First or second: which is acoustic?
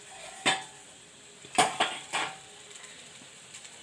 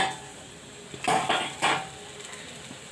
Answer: second